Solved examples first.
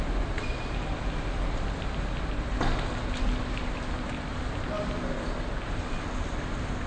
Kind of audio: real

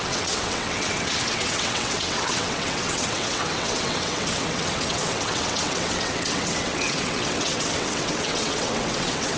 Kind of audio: fake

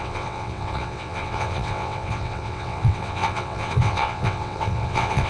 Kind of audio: fake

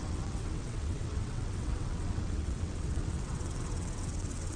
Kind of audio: fake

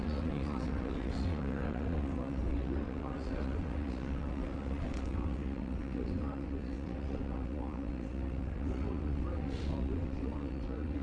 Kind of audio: fake